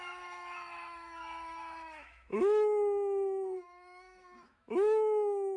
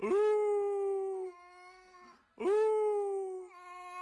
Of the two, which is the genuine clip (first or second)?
second